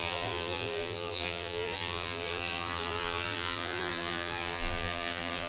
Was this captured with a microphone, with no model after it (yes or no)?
no